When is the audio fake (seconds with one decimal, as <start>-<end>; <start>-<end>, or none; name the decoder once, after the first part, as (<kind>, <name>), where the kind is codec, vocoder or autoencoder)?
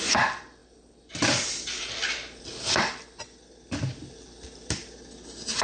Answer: none